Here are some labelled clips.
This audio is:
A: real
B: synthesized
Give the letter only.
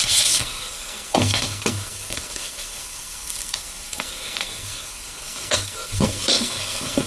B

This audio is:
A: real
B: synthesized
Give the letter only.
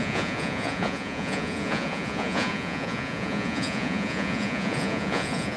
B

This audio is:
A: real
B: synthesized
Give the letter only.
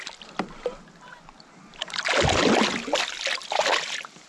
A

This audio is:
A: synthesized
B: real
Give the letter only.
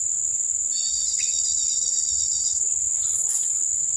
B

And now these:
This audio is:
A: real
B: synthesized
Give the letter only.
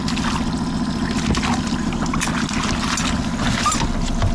A